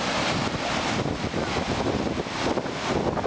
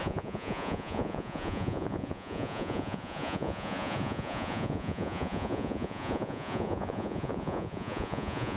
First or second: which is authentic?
first